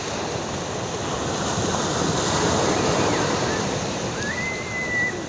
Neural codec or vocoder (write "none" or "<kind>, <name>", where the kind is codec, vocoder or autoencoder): none